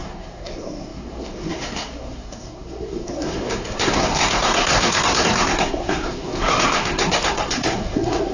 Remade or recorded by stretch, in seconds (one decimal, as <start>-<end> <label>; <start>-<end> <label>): 0.0-8.3 remade